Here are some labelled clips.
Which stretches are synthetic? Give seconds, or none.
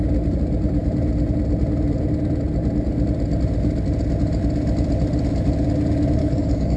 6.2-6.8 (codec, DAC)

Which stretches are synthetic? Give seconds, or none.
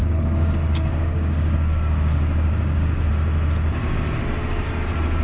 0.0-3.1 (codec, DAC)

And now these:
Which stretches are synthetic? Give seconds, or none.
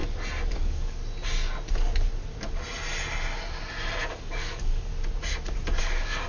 0.5-1.0 (codec, DAC); 4.1-4.9; 5.8-6.3